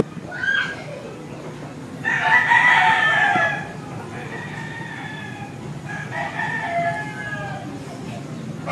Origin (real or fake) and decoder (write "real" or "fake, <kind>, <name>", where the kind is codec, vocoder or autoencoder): real